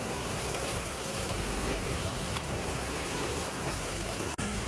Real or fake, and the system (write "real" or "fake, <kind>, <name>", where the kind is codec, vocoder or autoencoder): fake, codec, SNAC